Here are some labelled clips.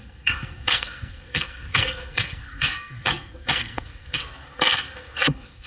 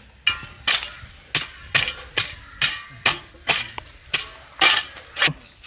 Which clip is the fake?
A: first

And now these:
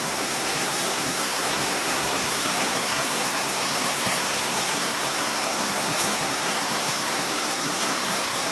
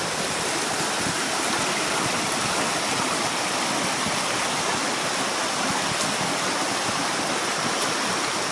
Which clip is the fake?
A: first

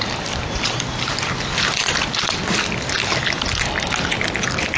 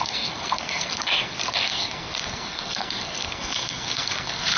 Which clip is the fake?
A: second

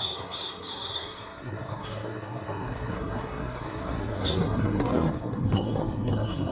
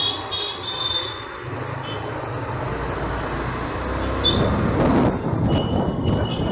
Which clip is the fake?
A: first